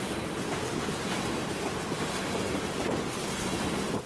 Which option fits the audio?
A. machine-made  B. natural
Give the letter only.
B